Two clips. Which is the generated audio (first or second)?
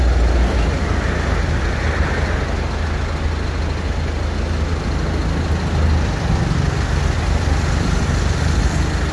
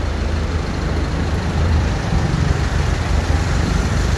second